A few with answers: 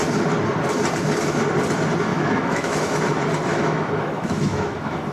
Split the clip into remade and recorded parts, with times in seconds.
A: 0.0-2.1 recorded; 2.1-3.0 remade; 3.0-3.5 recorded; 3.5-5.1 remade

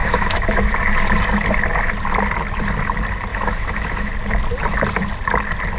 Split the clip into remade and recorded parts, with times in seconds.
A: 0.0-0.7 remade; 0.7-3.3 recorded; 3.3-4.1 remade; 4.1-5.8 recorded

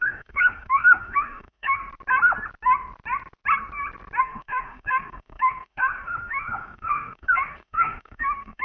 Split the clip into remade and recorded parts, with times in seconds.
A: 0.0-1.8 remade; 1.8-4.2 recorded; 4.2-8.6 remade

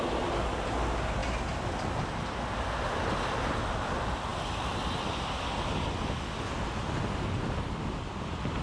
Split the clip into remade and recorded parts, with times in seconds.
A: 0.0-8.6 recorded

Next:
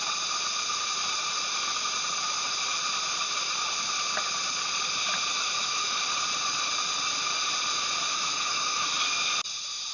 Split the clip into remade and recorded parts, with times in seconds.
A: 0.0-5.3 recorded; 5.3-6.0 remade; 6.0-8.1 recorded; 8.1-8.9 remade; 8.9-9.9 recorded